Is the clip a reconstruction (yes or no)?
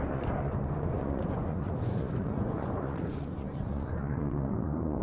yes